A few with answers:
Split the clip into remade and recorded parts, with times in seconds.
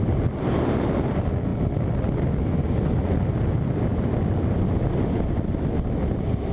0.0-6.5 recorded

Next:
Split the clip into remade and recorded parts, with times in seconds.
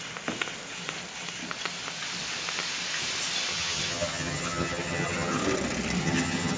0.0-3.5 recorded; 3.5-5.4 remade; 5.4-6.0 recorded; 6.0-6.6 remade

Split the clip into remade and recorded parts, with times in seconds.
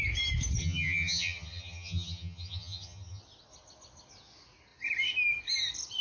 0.0-0.6 recorded; 0.6-3.2 remade; 3.2-6.0 recorded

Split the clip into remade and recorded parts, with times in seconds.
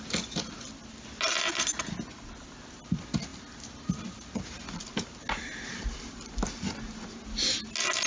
0.0-8.1 recorded